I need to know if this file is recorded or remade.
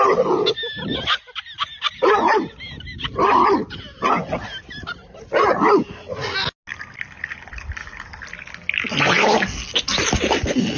recorded